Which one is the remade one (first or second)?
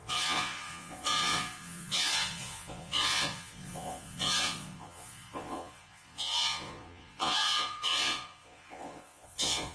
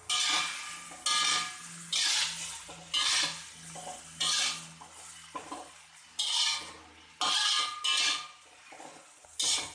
first